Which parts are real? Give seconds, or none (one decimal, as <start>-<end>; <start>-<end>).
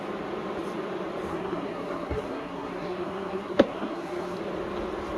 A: 0.0-1.3; 4.4-5.2